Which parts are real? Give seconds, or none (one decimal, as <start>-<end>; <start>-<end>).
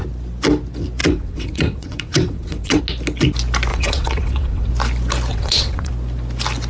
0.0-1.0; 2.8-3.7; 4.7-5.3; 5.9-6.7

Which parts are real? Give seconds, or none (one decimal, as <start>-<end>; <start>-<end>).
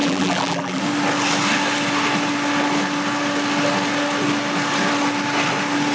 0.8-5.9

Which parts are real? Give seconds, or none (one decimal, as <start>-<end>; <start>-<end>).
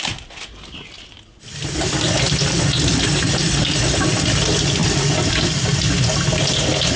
0.0-7.0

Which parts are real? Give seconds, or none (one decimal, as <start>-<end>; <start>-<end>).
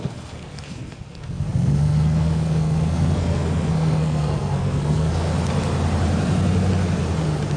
5.3-7.6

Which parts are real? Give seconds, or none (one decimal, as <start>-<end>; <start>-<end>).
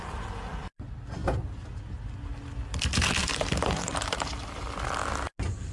0.0-3.2; 4.7-5.7